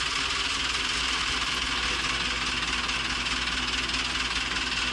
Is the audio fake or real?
real